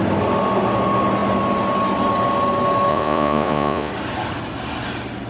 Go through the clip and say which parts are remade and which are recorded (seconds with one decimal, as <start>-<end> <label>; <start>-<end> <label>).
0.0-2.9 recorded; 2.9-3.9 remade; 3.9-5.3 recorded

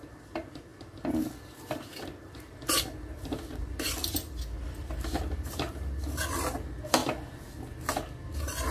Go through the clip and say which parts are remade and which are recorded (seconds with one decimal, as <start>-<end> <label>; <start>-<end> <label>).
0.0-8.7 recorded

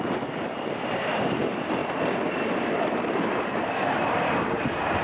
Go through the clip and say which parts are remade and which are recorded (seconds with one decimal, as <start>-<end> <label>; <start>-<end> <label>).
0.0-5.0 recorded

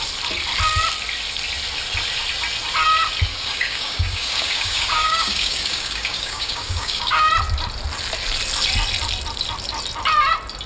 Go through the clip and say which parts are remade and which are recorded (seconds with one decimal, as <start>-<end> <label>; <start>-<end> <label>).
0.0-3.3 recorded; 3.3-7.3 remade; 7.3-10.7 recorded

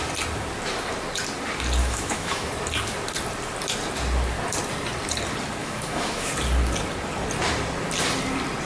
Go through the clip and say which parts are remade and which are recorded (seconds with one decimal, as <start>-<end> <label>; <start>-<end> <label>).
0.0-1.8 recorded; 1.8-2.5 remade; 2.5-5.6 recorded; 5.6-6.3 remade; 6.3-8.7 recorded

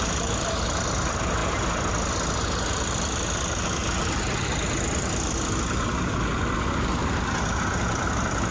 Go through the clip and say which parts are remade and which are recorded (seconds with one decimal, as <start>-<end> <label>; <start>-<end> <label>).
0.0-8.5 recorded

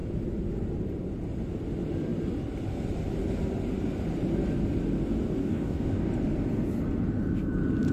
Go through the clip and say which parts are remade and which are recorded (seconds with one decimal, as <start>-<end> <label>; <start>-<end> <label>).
0.0-5.4 recorded; 5.4-6.1 remade; 6.1-7.9 recorded